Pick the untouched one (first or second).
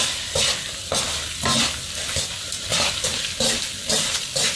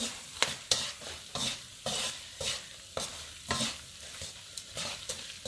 first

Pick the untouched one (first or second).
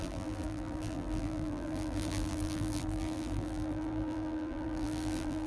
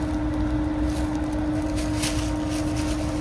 second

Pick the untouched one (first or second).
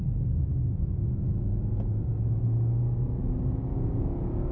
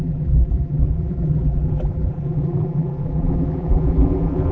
first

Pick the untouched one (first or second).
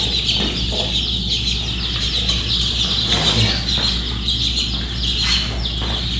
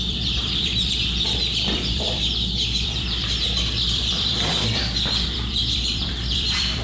first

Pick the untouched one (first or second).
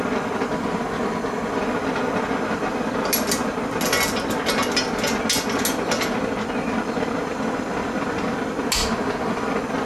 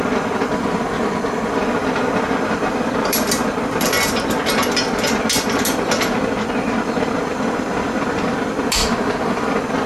first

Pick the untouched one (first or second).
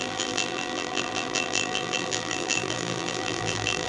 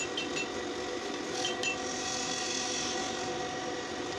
second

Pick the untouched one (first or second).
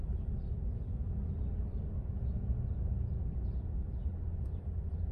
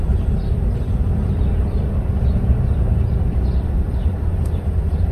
first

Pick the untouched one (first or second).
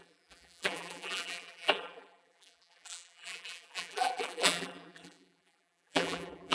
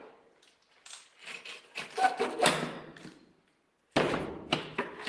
second